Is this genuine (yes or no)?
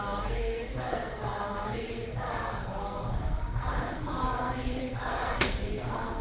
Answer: no